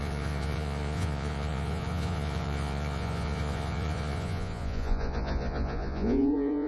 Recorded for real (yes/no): no